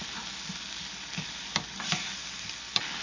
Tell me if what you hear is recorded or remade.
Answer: recorded